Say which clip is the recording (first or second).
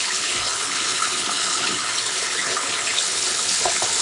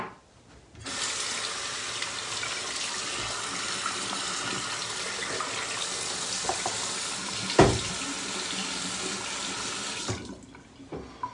second